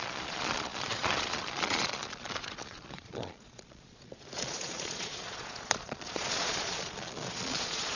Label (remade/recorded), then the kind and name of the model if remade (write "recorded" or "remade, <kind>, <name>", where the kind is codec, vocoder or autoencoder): remade, vocoder, Vocos